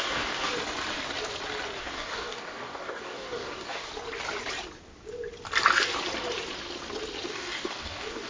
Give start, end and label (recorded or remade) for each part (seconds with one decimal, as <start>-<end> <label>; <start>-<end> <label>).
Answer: 0.0-0.5 remade; 0.5-1.8 recorded; 1.8-3.9 remade; 3.9-7.3 recorded; 7.3-8.3 remade